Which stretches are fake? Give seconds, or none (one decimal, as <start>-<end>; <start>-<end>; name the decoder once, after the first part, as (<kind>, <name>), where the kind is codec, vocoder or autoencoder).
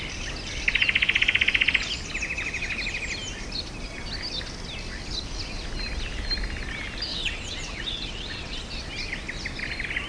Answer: 7.1-8.6 (vocoder, WaveNeXt)